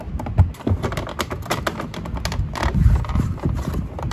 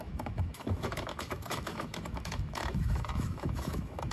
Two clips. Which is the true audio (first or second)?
first